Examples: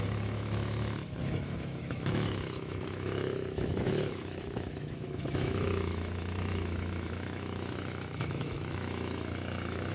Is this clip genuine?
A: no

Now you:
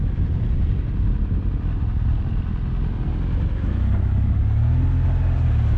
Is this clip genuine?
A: yes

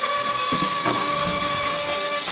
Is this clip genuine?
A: no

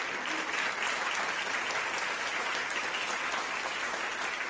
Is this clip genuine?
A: yes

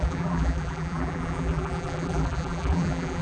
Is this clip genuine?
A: no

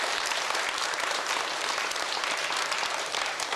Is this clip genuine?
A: no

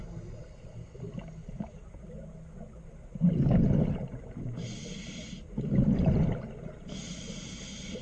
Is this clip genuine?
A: yes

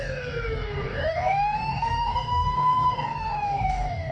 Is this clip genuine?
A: no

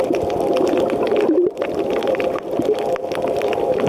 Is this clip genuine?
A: no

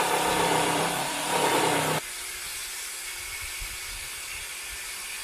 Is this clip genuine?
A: no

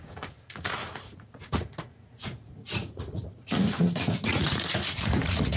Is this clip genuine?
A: no